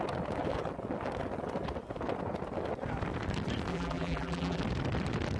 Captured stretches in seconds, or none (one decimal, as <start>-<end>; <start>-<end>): 0.0-3.7; 4.6-5.4